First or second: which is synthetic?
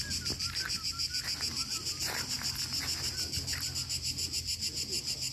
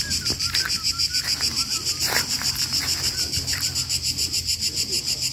second